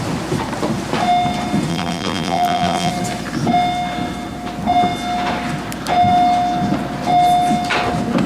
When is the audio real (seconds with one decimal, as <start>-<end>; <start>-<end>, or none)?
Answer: 0.0-1.7; 2.9-8.3